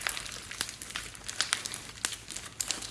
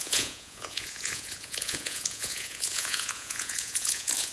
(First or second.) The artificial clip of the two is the second